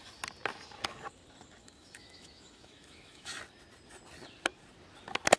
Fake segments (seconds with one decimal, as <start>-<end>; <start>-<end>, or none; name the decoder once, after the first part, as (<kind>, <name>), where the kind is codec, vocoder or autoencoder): 1.6-3.4 (autoencoder, DAC-VAE)